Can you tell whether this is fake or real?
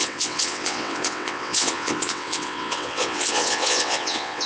fake